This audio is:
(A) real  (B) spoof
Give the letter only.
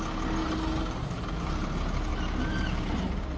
A